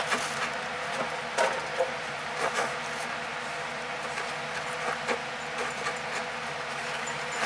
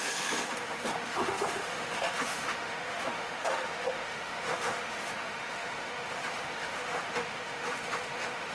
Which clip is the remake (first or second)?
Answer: second